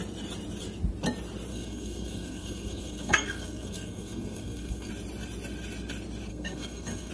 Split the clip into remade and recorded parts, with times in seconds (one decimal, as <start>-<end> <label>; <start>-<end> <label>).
0.0-1.5 recorded; 1.5-4.9 remade; 4.9-6.3 recorded; 6.3-7.1 remade